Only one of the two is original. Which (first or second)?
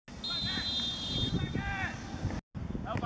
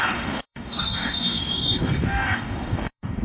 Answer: first